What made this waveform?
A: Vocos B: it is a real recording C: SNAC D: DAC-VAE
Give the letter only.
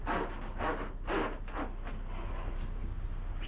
B